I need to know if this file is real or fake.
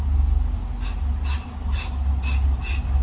real